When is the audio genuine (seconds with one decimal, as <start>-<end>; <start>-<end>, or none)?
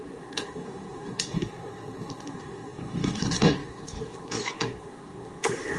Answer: none